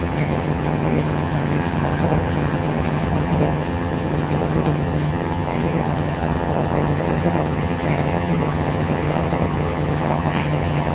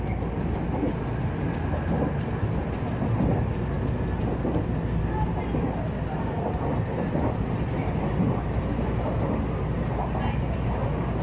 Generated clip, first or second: first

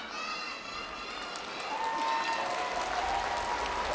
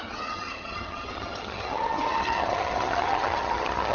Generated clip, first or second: second